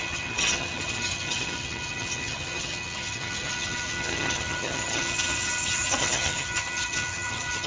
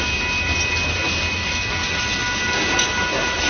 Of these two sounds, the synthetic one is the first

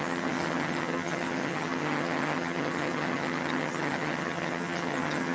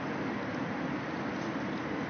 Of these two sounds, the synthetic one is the first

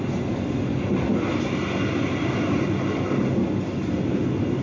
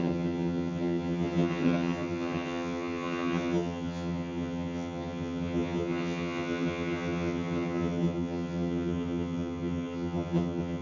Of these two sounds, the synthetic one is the second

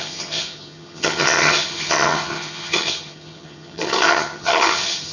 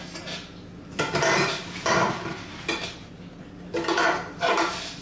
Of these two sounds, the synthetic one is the first